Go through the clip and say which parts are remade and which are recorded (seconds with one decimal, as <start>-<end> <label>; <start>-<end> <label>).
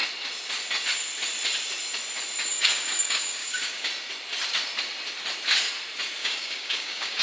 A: 0.0-2.5 recorded; 2.5-3.9 remade; 3.9-6.2 recorded; 6.2-7.2 remade